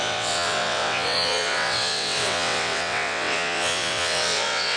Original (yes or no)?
no